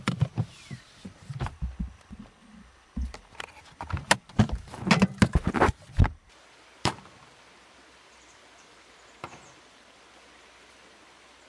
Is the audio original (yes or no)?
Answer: yes